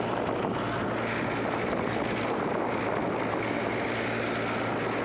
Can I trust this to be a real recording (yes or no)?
yes